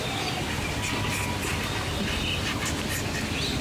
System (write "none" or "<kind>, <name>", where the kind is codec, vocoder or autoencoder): none